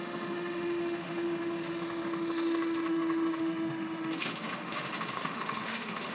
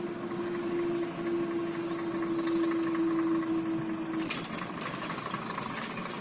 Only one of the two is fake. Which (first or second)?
first